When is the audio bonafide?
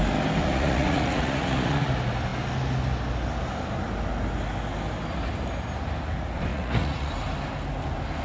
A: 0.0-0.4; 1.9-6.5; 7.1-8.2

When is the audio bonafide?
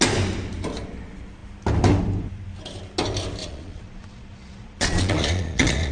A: 0.0-3.4